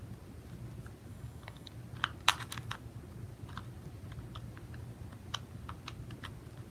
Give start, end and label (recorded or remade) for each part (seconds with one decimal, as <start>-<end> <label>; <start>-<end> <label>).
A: 0.0-1.1 recorded; 1.1-1.7 remade; 1.7-6.7 recorded